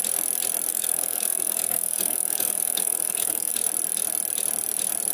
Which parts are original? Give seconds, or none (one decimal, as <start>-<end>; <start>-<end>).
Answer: 0.0-0.7; 3.5-5.1